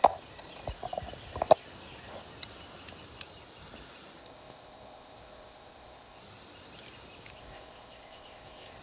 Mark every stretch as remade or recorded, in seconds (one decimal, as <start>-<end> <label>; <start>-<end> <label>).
0.0-4.2 recorded; 4.2-6.2 remade; 6.2-7.3 recorded; 7.3-8.8 remade